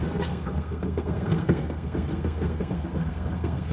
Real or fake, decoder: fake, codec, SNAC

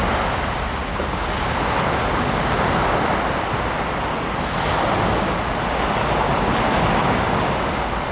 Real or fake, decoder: real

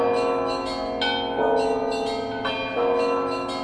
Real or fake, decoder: real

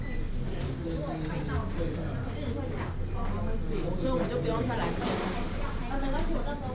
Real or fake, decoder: real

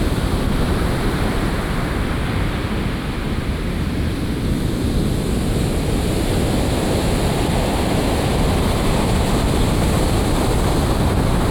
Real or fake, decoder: real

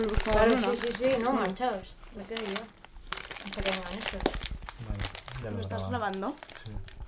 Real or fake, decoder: real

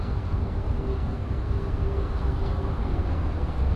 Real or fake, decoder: fake, codec, SNAC